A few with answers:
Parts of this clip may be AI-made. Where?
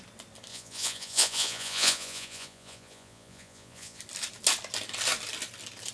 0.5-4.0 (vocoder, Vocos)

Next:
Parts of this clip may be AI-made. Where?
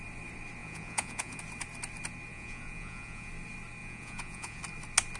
0.6-1.4 (vocoder, Vocos); 2.3-3.3; 3.8-4.6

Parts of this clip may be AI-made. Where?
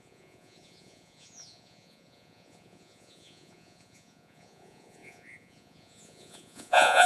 0.0-7.1 (vocoder, Vocos)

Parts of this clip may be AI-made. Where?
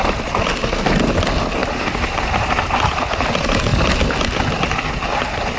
none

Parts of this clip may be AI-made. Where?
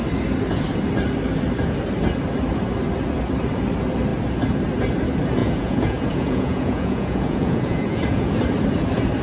5.4-8.3 (vocoder, Vocos)